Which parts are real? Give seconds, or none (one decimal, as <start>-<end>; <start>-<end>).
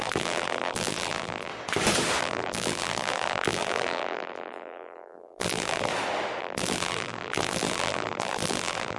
1.5-2.2; 5.9-6.4